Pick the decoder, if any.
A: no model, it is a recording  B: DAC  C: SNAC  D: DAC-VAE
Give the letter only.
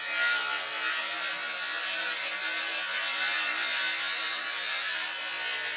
A